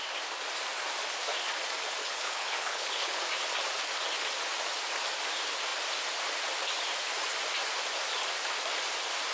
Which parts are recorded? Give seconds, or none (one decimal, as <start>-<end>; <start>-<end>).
0.0-2.0; 3.2-9.3